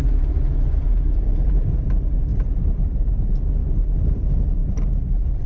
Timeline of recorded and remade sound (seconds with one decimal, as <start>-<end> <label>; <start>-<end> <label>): 0.0-5.5 recorded